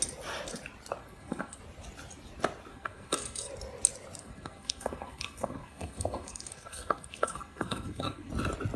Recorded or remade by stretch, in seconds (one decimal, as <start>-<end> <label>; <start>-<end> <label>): 0.0-1.0 recorded; 1.0-1.6 remade; 1.6-2.7 recorded; 2.7-3.5 remade; 3.5-4.2 recorded; 4.2-8.3 remade; 8.3-8.8 recorded